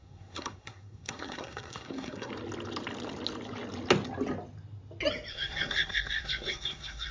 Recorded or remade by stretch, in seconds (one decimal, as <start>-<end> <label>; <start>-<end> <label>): 0.0-2.3 remade; 2.3-5.3 recorded; 5.3-7.1 remade